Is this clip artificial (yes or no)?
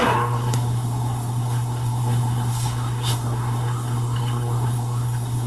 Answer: yes